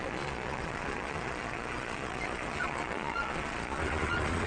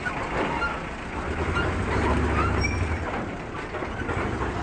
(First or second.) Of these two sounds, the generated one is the first